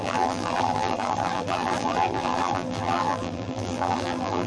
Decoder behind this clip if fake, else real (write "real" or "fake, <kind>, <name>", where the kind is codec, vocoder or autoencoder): fake, vocoder, BigVGAN v2